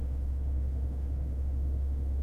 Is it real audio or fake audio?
fake